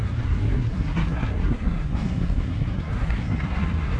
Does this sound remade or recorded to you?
remade